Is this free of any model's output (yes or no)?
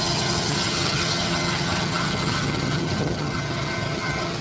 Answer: no